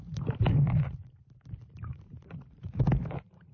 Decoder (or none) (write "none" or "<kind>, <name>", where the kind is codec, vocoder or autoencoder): vocoder, BigVGAN v2